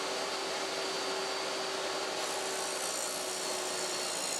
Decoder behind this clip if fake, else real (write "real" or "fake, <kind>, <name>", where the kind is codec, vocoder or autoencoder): real